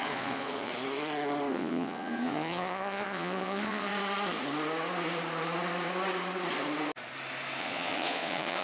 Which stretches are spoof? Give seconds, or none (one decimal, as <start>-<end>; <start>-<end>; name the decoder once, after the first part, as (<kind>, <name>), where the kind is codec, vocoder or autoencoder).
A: 0.0-0.7 (vocoder, Vocos); 1.5-3.9; 7.6-8.6